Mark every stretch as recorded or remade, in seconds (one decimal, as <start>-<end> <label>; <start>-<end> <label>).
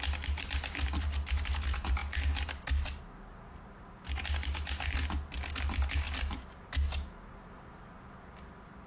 0.0-8.9 recorded